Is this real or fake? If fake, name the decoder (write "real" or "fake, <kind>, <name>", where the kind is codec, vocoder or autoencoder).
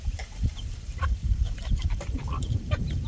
fake, vocoder, BigVGAN v2